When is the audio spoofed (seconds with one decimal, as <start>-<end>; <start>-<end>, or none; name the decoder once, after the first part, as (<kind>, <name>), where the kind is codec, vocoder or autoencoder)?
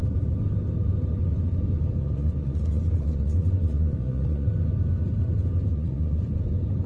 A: 2.0-4.5 (vocoder, Vocos); 5.7-6.3